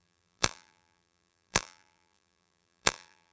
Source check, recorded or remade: remade